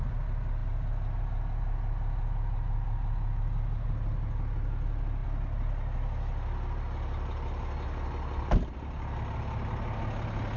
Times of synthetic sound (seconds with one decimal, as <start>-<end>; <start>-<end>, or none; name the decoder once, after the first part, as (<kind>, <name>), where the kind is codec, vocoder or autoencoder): none